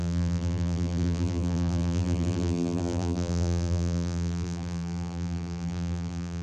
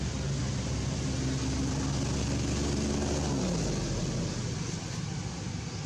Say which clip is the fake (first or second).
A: first